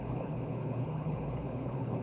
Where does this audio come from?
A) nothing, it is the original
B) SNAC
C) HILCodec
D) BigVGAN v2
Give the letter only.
C